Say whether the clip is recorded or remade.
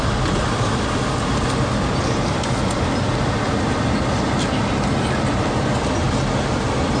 recorded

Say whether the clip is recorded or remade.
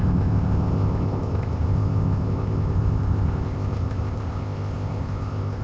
remade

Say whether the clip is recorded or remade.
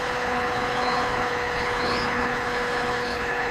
remade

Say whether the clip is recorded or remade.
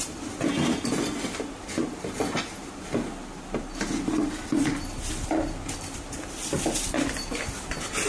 recorded